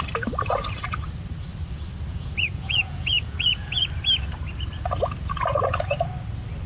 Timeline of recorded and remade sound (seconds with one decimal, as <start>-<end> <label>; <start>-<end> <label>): 0.0-2.1 recorded; 2.1-3.8 remade; 3.8-6.7 recorded